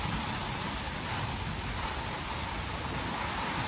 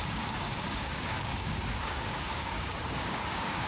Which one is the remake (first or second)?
second